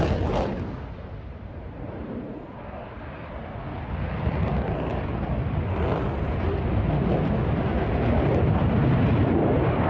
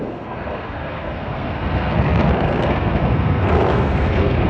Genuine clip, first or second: first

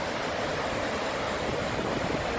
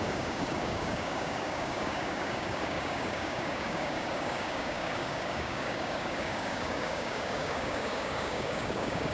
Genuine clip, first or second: first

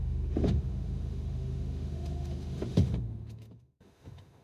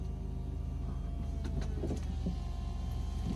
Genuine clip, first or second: second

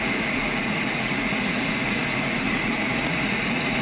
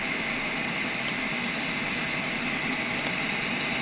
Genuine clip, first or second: second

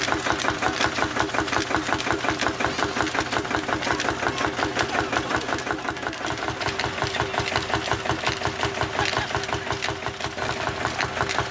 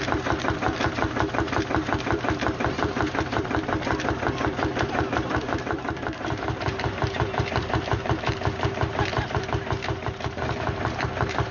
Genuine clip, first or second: first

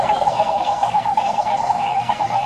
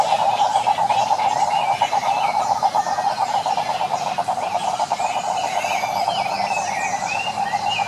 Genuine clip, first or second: second